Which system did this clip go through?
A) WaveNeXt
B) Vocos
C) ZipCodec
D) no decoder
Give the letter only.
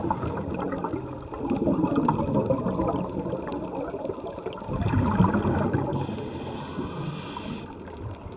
D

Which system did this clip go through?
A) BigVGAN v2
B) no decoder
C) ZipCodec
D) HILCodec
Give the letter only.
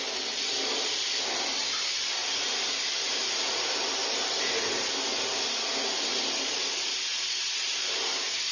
B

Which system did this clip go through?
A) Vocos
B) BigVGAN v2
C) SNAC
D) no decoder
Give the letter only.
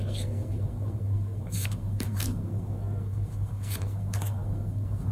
C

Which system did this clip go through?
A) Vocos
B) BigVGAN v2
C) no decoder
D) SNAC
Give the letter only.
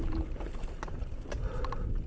C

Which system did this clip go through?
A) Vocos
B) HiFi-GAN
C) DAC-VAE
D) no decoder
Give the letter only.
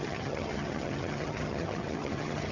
B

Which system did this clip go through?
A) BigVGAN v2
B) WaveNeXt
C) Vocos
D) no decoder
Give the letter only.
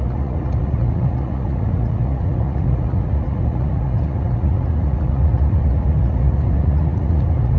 C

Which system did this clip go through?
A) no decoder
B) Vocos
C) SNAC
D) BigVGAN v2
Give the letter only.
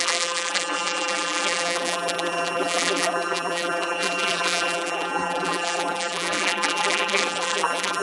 D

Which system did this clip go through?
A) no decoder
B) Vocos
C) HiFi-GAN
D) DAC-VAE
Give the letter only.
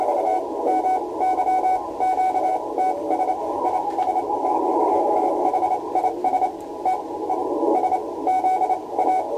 A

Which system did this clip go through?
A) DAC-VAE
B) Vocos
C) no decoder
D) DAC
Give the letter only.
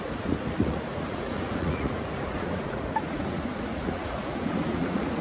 B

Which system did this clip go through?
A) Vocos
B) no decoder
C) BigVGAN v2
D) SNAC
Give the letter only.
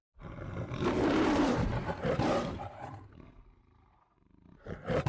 C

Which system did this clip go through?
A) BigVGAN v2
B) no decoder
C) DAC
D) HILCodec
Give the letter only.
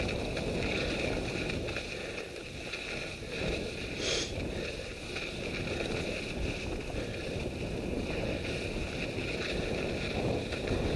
B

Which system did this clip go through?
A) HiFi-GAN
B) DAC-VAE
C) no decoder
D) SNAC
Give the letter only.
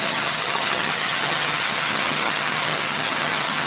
A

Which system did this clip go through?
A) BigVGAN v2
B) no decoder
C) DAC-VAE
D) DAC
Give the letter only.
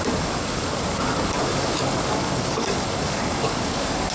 D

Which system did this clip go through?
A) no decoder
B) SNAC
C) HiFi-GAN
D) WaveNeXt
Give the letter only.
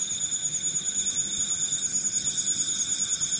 C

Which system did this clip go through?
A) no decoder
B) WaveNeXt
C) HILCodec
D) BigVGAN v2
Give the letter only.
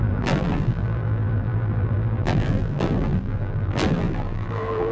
D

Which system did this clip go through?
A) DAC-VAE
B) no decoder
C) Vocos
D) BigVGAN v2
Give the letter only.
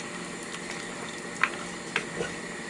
B